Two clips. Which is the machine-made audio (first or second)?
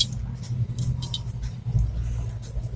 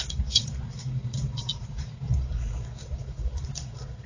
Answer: second